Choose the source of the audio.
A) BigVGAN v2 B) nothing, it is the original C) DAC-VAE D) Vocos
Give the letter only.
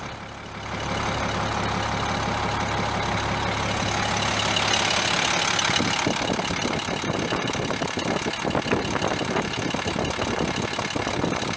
B